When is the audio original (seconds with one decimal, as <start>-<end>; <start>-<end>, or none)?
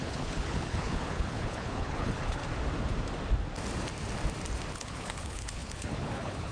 2.4-4.7